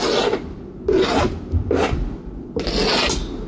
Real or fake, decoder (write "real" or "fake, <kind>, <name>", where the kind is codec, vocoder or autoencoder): real